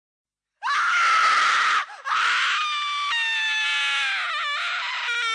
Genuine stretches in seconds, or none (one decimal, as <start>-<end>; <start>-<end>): 0.0-5.3